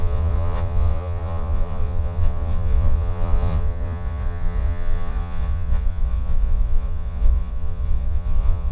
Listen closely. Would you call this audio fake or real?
fake